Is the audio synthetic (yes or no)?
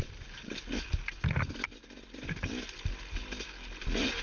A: no